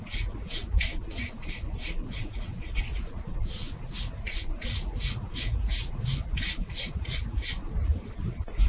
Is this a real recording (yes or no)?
no